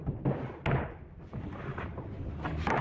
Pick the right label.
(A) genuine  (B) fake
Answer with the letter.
A